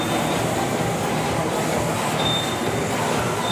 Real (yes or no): yes